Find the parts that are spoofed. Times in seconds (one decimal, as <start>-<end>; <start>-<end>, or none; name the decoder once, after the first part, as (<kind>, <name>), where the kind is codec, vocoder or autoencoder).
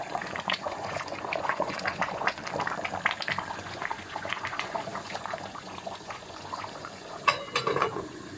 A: 0.0-2.4 (vocoder, Vocos); 3.5-8.4